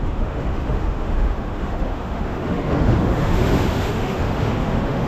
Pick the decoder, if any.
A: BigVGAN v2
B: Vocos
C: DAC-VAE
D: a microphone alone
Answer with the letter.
C